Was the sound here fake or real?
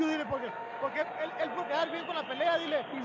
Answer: real